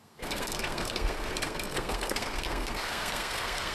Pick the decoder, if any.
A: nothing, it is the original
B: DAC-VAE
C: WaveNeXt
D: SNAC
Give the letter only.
D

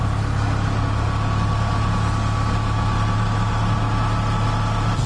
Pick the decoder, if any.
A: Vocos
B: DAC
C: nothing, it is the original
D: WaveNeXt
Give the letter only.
C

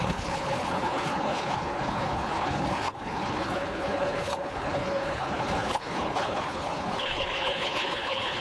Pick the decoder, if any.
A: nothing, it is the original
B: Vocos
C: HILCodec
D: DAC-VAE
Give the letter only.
C